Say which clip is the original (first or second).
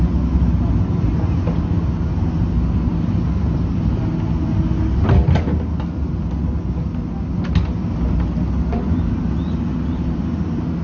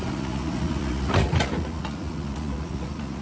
first